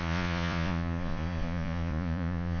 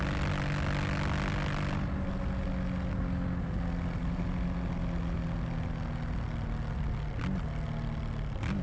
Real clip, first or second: second